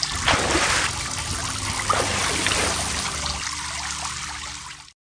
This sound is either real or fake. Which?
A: real